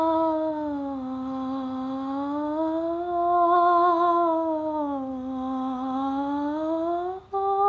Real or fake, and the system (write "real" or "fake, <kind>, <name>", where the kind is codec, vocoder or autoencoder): real